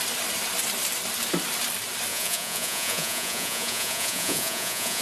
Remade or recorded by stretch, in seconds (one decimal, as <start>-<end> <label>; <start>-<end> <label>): 0.0-2.1 recorded; 2.1-5.0 remade